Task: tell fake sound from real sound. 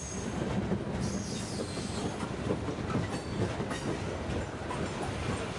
real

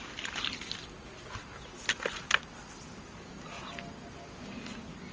real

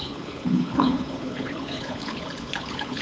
fake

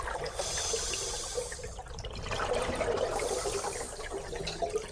real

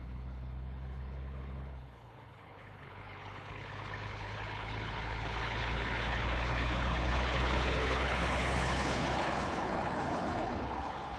fake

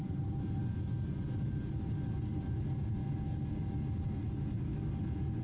real